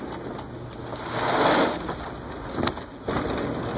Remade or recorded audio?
recorded